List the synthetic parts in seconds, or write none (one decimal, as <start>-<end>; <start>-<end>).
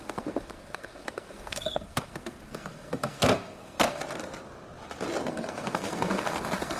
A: 0.0-4.0; 5.3-6.8